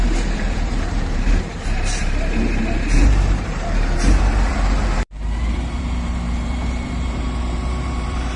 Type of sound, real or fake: fake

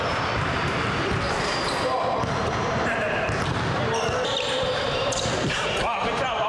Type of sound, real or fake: fake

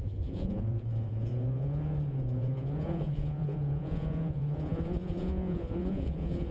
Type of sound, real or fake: fake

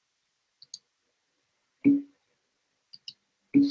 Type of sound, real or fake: real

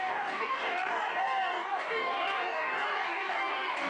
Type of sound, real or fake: fake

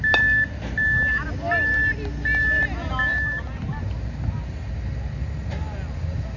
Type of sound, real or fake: real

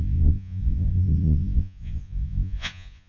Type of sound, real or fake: fake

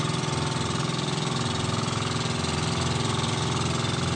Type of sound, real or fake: real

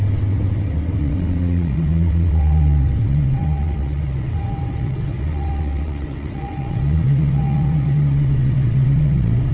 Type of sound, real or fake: fake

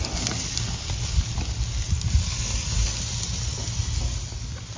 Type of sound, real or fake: real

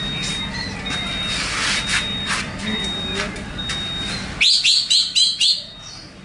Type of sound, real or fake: real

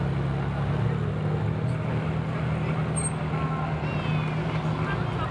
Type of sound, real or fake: real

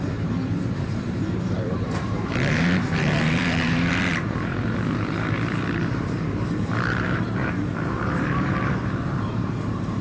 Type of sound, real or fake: fake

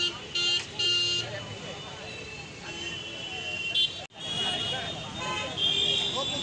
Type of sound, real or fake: real